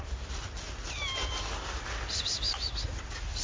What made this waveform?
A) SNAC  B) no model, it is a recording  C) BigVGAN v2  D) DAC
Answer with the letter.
B